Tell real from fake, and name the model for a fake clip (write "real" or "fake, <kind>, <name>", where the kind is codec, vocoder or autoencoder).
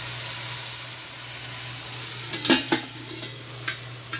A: real